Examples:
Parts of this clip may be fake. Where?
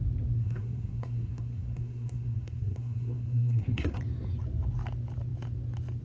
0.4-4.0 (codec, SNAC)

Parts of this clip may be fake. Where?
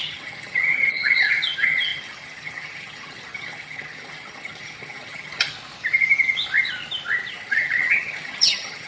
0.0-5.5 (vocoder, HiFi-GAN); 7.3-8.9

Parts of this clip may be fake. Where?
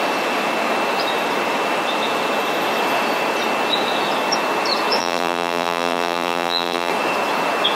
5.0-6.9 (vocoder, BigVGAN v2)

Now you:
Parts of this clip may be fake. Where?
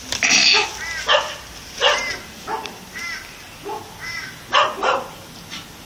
none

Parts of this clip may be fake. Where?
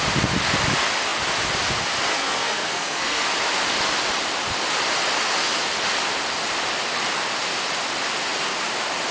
2.1-3.3 (codec, SNAC)